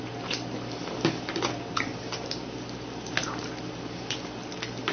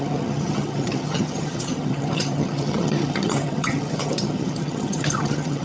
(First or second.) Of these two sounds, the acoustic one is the first